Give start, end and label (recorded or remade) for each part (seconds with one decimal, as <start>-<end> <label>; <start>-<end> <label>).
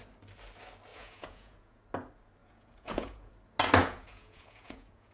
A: 0.0-0.9 recorded; 0.9-1.8 remade; 1.8-2.4 recorded; 2.4-3.3 remade; 3.3-3.8 recorded; 3.8-5.1 remade